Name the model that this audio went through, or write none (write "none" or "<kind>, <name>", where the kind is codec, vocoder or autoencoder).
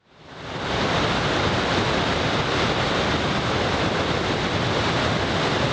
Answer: none